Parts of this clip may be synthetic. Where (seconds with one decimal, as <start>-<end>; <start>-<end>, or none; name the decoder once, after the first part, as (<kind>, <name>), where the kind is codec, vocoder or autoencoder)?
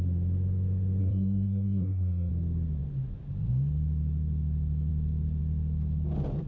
1.0-2.3 (codec, SNAC)